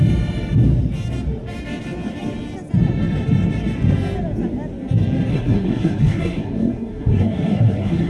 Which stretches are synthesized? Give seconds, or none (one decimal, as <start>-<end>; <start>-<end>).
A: 5.3-8.1